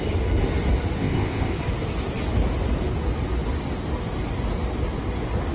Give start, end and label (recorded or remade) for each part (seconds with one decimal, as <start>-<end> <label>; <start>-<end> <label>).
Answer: 0.0-1.0 recorded; 1.0-1.5 remade; 1.5-5.5 recorded